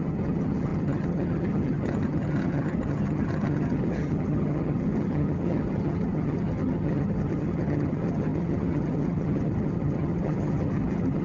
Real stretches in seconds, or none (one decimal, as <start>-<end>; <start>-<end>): none